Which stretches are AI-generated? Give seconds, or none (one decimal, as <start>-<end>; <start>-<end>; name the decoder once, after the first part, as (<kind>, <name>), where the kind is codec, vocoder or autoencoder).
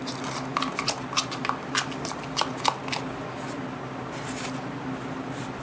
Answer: none